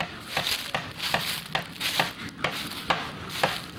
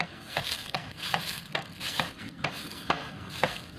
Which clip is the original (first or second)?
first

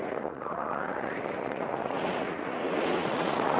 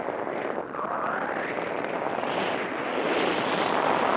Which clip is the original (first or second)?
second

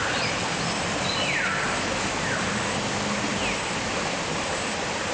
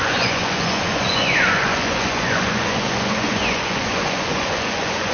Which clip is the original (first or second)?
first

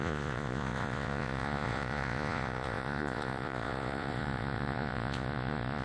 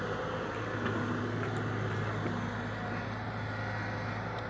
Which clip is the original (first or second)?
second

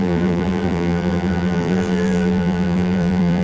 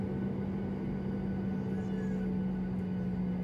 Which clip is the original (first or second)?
second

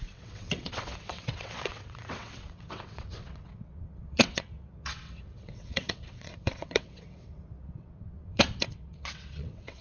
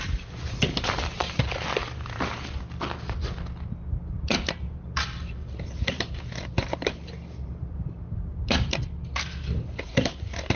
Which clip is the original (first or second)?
second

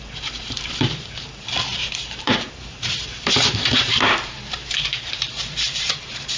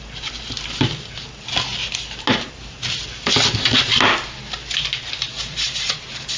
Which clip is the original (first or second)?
second